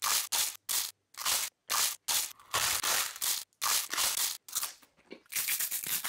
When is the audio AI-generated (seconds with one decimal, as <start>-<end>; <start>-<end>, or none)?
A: none